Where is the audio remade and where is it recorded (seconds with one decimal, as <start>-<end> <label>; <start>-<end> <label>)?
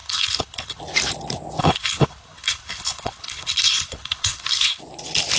0.0-0.8 remade; 0.8-1.6 recorded; 1.6-4.8 remade; 4.8-5.4 recorded